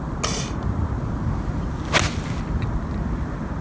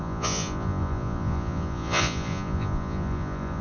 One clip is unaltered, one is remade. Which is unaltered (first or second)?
first